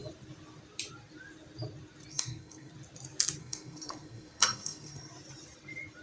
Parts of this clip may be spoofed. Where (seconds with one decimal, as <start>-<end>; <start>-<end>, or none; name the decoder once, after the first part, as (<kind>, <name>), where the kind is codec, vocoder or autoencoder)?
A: 2.1-2.7 (codec, SNAC); 3.4-5.1